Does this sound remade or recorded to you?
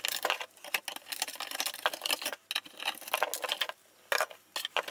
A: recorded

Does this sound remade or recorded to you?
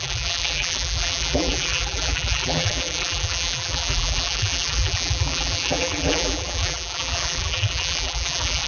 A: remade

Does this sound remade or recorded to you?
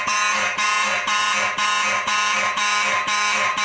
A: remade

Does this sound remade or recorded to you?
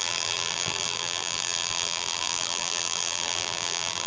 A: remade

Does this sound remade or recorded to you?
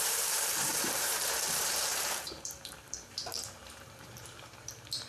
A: remade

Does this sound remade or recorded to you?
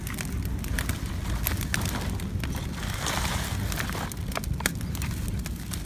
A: recorded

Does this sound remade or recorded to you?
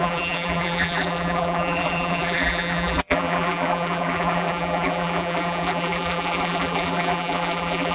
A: remade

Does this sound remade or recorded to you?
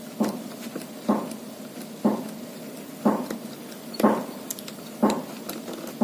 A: recorded